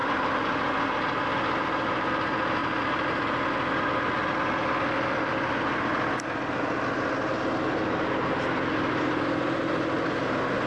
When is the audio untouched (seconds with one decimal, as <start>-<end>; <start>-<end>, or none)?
0.0-10.7